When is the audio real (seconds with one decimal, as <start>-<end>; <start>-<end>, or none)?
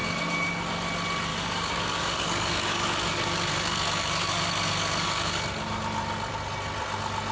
0.0-1.3; 5.4-7.3